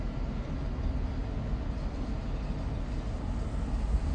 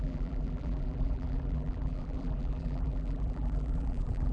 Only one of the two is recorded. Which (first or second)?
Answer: first